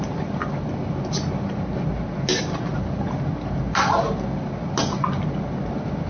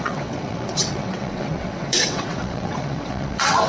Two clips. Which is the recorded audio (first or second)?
first